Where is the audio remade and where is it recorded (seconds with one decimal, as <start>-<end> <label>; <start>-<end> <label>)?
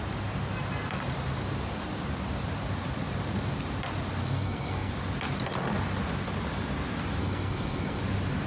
0.0-4.2 recorded; 4.2-4.9 remade; 4.9-7.2 recorded; 7.2-8.0 remade; 8.0-8.5 recorded